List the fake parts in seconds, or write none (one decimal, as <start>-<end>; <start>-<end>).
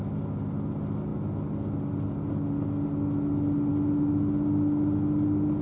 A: none